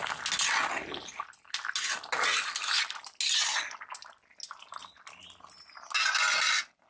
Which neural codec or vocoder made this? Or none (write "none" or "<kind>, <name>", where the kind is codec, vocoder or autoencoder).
none